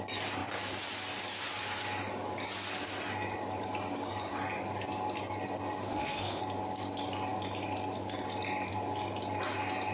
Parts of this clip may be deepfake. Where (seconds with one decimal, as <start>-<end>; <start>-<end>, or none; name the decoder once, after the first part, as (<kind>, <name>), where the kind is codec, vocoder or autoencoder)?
5.9-6.4 (autoencoder, DAC-VAE)